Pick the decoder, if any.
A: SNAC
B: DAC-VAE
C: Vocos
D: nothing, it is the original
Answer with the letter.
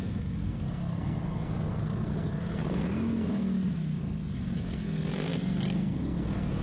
A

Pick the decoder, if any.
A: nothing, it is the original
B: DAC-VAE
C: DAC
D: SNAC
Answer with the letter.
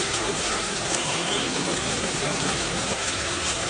D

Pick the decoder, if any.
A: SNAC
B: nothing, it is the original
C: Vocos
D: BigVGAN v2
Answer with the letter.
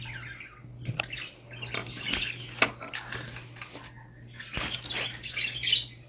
B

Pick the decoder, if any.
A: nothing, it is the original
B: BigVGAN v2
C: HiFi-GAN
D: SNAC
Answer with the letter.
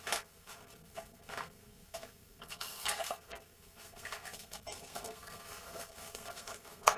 D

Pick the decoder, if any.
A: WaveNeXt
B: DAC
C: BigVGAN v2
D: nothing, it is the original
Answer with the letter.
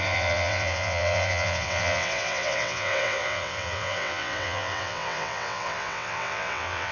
A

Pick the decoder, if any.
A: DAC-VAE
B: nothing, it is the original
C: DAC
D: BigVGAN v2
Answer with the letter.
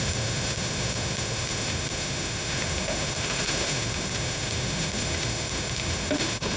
A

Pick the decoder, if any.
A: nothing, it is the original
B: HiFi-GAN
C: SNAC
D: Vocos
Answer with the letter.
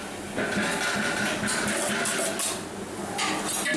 A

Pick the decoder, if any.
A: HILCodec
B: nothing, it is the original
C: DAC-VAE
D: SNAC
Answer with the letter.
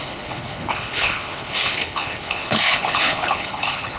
A